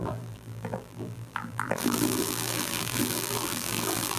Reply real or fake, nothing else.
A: fake